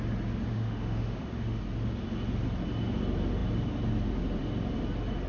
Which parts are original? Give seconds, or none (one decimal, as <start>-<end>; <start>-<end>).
0.0-0.5; 1.6-5.3